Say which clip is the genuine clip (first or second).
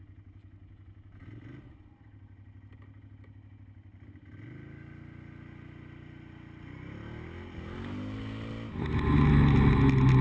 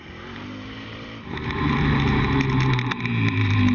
first